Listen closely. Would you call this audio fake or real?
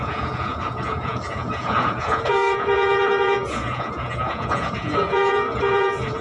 fake